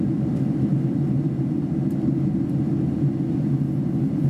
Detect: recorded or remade recorded